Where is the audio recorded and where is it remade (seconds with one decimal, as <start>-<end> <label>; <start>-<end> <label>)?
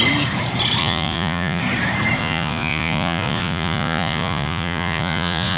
0.0-0.8 recorded; 0.8-1.6 remade; 1.6-2.2 recorded; 2.2-5.6 remade